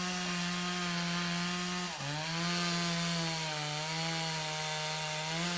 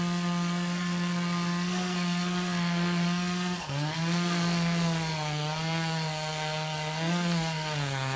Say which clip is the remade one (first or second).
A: second